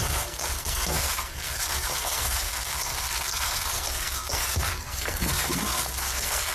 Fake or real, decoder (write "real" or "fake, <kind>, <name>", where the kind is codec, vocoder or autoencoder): fake, codec, SNAC